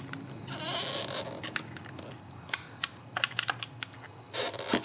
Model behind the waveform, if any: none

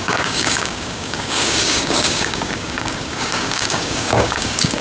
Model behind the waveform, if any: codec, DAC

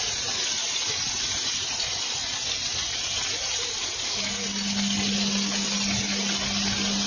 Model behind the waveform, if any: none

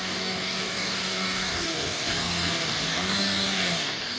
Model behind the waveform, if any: codec, DAC